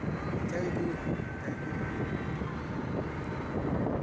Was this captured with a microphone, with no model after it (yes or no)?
yes